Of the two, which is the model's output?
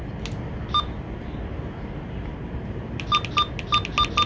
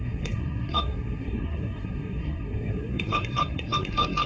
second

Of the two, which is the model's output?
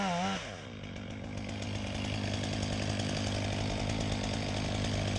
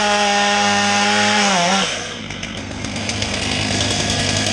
second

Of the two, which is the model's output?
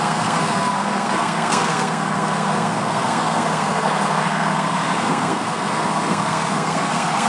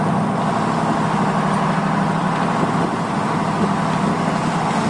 first